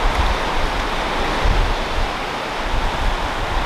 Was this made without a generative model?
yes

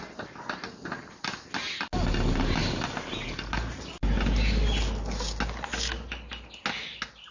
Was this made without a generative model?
yes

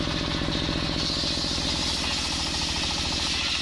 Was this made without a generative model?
yes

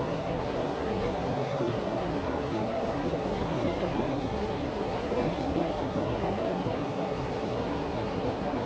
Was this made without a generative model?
no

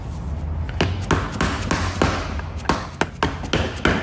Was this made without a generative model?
yes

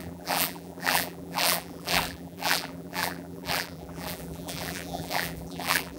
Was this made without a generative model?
no